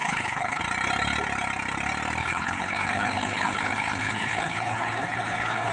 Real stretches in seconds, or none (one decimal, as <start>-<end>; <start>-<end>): 0.6-2.2

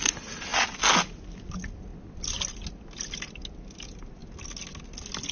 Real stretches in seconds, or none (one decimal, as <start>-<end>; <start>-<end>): 0.0-5.3

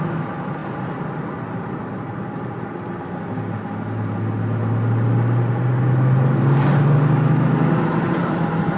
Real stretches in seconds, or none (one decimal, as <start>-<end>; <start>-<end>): 0.0-8.8

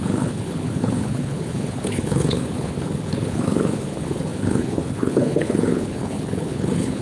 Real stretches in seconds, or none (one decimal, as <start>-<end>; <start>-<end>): none

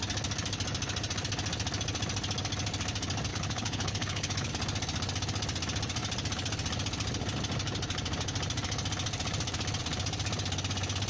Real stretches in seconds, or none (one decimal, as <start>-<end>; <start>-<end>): 0.0-3.3; 4.5-11.1

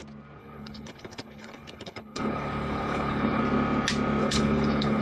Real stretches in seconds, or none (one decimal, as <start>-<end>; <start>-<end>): 0.0-0.4; 3.4-4.2